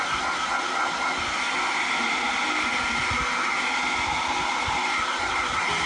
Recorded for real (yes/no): yes